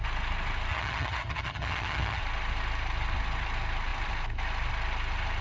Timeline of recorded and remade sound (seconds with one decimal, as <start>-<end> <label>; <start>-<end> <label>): 0.0-0.7 recorded; 0.7-2.2 remade; 2.2-5.4 recorded